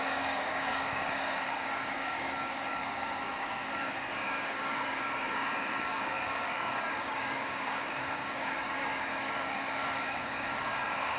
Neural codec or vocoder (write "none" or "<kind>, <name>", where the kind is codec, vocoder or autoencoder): codec, DAC